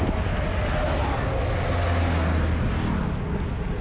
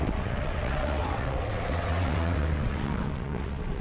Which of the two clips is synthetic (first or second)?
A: second